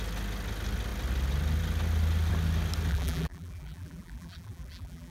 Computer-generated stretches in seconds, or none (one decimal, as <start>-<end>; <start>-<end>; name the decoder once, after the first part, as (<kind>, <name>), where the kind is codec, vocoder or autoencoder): 2.9-5.1 (vocoder, BigVGAN v2)